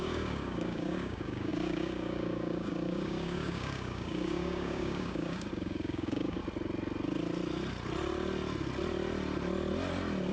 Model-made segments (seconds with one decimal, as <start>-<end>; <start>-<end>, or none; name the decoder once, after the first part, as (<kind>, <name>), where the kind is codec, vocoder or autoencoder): 0.0-6.4 (codec, DAC)